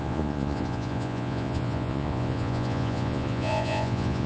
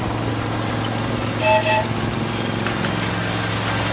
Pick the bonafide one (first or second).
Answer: second